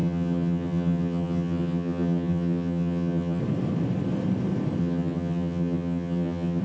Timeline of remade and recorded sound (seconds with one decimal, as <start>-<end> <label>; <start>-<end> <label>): 0.0-3.4 remade; 3.4-4.8 recorded; 4.8-6.6 remade